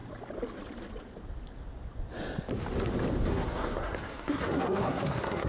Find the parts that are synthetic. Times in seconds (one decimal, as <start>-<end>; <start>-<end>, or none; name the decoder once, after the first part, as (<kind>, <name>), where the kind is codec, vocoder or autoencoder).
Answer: 3.3-5.5 (codec, SNAC)

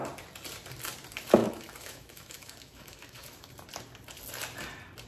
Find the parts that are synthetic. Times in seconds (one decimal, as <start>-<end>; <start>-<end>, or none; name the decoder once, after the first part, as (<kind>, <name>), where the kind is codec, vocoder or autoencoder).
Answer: 1.4-3.5 (autoencoder, DAC-VAE)

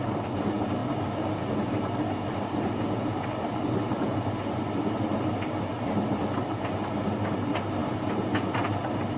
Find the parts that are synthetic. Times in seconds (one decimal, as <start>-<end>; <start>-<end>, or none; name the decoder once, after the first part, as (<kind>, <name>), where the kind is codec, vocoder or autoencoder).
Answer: 5.7-6.5 (vocoder, BigVGAN v2)

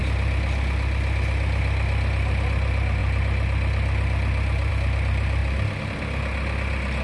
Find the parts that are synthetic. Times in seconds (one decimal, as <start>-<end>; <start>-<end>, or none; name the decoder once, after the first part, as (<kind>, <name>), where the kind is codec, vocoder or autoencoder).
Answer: none

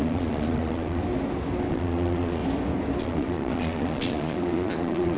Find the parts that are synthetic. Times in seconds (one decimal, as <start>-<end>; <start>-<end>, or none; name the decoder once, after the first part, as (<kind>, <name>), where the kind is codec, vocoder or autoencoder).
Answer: 0.0-1.0 (vocoder, Vocos); 1.7-2.4; 3.0-5.2

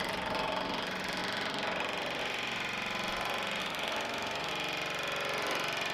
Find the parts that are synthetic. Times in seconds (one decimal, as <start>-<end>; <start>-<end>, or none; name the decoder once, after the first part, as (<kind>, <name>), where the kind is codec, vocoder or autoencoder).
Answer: 3.6-4.5 (codec, SNAC)

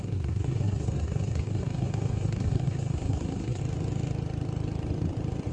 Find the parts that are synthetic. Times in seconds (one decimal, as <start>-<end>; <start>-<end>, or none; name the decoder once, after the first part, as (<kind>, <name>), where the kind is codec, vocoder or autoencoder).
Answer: 0.0-3.6 (codec, SNAC)

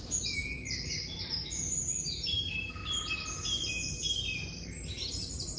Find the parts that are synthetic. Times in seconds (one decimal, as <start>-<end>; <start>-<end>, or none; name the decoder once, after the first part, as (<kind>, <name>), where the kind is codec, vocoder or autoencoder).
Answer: 0.0-5.6 (vocoder, BigVGAN v2)